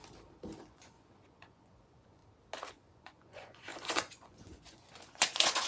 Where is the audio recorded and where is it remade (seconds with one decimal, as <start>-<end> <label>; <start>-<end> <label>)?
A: 0.0-0.6 recorded; 0.6-2.2 remade; 2.2-2.7 recorded; 2.7-5.7 remade